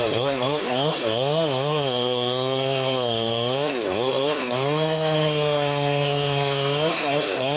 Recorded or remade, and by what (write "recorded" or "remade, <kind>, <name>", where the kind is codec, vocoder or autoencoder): remade, codec, SNAC